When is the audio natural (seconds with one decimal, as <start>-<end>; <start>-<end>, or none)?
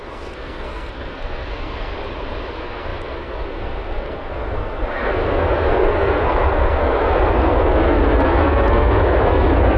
1.9-2.5